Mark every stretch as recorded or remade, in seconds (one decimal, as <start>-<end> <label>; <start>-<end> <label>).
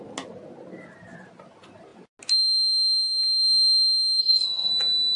0.0-4.2 recorded; 4.2-4.7 remade; 4.7-5.2 recorded